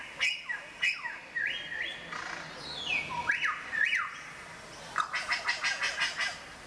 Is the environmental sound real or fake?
real